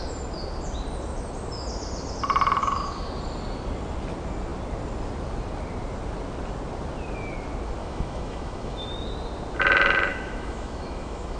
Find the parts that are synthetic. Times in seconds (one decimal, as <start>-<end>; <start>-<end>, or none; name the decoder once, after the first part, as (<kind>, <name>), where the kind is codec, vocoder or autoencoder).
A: 2.6-3.1 (autoencoder, DAC-VAE); 7.8-8.9; 10.1-11.4